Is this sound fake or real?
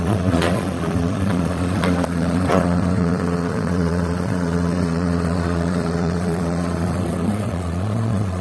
fake